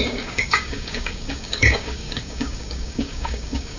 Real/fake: fake